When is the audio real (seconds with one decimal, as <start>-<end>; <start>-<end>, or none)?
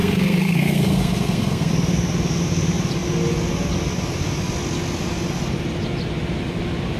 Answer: 1.7-7.0